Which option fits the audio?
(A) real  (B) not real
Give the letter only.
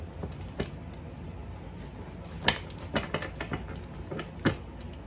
A